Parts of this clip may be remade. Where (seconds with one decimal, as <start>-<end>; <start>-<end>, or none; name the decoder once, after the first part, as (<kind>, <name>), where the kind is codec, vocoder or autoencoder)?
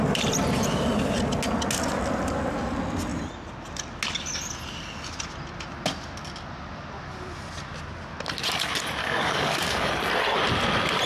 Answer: 9.0-9.9 (codec, DAC)